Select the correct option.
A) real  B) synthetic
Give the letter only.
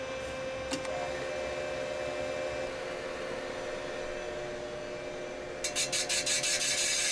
A